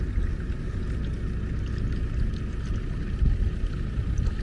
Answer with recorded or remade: recorded